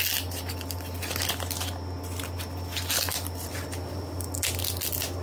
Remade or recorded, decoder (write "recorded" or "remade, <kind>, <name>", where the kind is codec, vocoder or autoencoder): recorded